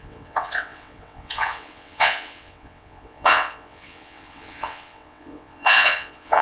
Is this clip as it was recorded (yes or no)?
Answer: no